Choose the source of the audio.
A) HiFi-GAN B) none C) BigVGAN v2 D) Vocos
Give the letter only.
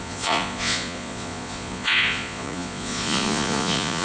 D